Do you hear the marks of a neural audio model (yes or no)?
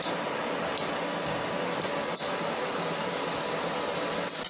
no